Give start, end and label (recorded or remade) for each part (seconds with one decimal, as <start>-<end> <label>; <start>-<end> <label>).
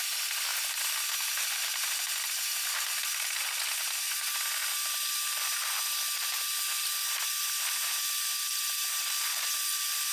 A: 0.0-0.5 recorded; 0.5-1.1 remade; 1.1-4.6 recorded; 4.6-7.4 remade; 7.4-10.1 recorded